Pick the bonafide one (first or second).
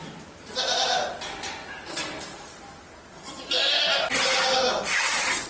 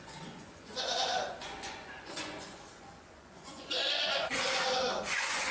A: first